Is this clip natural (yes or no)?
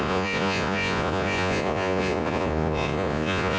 no